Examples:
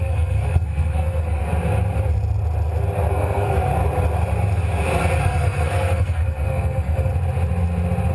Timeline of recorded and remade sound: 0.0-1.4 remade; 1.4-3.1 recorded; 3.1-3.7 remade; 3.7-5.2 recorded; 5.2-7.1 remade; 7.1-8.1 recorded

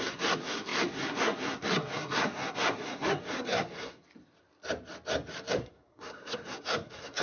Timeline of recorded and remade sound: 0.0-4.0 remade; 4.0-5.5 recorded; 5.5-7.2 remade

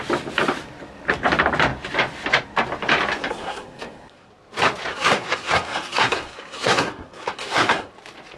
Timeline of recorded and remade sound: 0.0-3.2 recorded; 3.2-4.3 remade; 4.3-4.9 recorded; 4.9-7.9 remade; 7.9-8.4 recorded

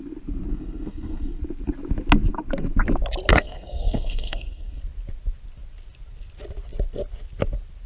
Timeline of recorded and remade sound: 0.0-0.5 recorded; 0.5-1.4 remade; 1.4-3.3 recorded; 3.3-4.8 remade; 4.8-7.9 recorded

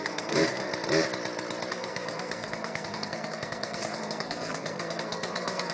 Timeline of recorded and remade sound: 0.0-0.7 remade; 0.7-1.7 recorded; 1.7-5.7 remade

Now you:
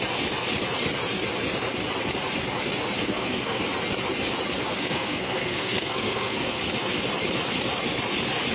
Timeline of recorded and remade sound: 0.0-3.0 recorded; 3.0-3.6 remade; 3.6-4.7 recorded; 4.7-6.6 remade; 6.6-8.5 recorded

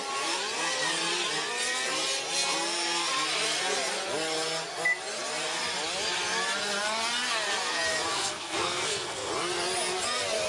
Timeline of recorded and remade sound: 0.0-8.1 recorded; 8.1-9.3 remade; 9.3-10.5 recorded